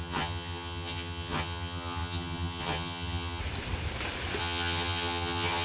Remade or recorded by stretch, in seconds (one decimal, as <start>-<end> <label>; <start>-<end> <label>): 0.0-3.4 remade; 3.4-4.4 recorded; 4.4-5.6 remade